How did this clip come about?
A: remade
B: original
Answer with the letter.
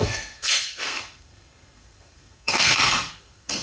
A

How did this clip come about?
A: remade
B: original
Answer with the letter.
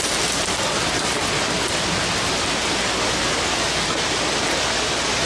B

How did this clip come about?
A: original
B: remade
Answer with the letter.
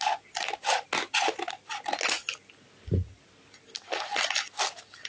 A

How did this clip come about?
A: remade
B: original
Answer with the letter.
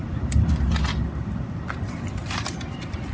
A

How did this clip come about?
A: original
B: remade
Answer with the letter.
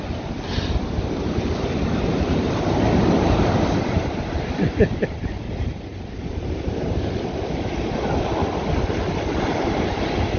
A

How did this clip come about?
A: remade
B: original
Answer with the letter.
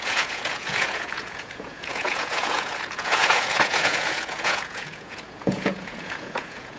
A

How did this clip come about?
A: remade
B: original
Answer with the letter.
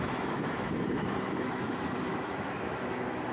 A